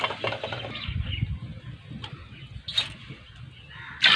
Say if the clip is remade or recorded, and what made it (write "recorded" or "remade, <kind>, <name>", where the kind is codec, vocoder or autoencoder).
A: recorded